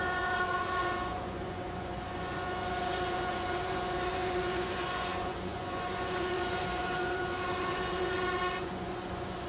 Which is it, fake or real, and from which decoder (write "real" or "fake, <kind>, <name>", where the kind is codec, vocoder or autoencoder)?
fake, vocoder, Vocos